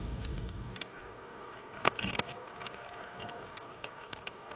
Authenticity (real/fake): fake